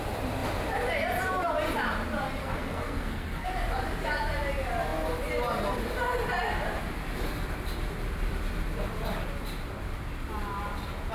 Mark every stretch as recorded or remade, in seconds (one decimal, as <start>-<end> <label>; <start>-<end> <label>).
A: 0.0-2.4 recorded; 2.4-3.5 remade; 3.5-11.1 recorded